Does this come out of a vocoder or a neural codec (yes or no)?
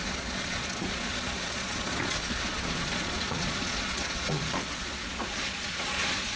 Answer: yes